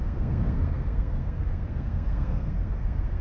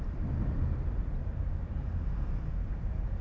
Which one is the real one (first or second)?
second